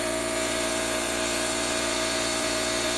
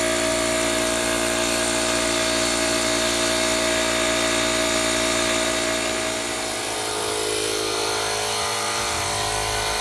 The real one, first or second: second